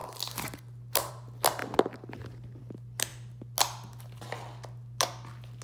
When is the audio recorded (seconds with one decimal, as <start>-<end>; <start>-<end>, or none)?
0.0-5.6